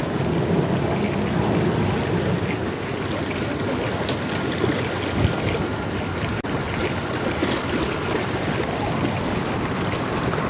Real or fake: real